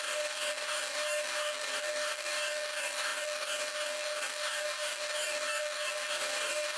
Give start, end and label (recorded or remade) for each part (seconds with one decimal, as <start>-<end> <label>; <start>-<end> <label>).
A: 0.0-6.8 remade